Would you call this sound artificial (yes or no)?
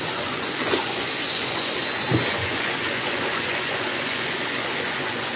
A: yes